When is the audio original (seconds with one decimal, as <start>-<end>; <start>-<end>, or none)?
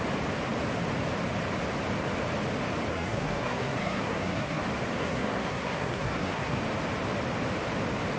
0.0-2.9; 4.6-5.0; 6.6-8.2